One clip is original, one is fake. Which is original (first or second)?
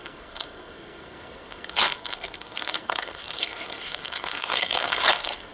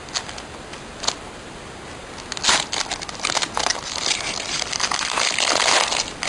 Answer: second